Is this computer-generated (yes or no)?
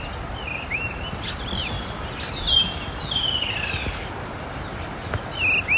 no